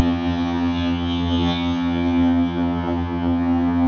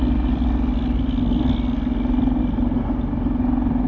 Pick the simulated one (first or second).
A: first